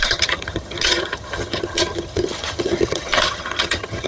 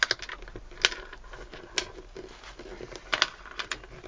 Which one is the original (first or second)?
second